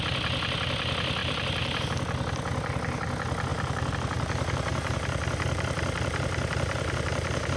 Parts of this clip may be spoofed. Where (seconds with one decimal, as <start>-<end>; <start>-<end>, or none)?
1.2-1.8; 3.5-7.6